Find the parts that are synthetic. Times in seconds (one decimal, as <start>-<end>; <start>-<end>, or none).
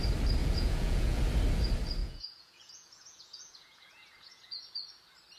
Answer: 0.4-1.2; 2.0-4.6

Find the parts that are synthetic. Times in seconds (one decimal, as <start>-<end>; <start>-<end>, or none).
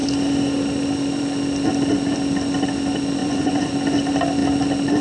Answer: 3.2-3.7